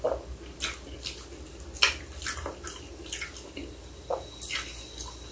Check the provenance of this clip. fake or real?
real